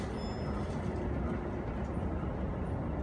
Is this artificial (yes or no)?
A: no